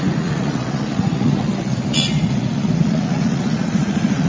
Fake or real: fake